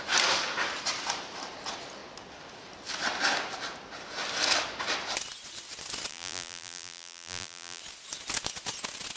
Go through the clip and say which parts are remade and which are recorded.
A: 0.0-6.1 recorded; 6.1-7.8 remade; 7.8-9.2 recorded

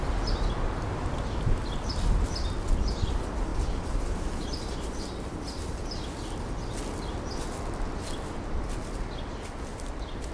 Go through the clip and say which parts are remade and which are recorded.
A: 0.0-9.7 recorded; 9.7-10.3 remade